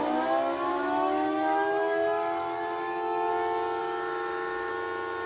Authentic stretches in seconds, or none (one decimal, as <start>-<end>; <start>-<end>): 0.0-0.7; 3.3-3.8; 4.7-5.3

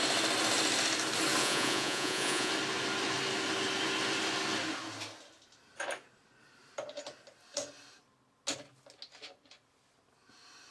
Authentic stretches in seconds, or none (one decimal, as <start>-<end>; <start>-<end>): 0.0-1.4; 2.5-10.7

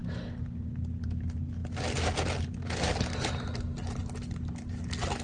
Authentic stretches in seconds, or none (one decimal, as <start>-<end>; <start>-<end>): 0.0-5.2

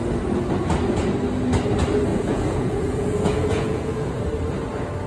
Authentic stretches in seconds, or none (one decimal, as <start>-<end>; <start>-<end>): 0.0-2.1; 4.2-5.1

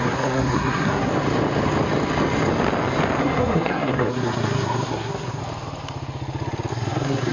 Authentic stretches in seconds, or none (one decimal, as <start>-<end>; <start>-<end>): 1.1-3.2; 5.4-6.7